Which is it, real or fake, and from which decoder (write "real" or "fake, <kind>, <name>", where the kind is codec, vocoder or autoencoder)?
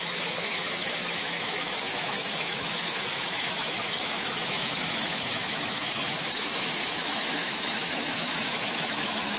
fake, autoencoder, DAC-VAE